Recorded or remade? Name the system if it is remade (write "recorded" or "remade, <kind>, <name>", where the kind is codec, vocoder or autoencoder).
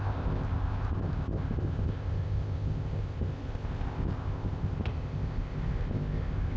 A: remade, codec, ZipCodec